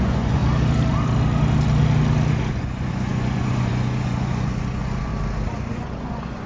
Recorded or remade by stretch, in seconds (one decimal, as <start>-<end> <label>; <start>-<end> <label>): 0.0-0.4 remade; 0.4-2.5 recorded; 2.5-5.1 remade; 5.1-5.7 recorded; 5.7-6.5 remade